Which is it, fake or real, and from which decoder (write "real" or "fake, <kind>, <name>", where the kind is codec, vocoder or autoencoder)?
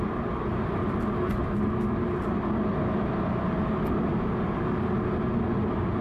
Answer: real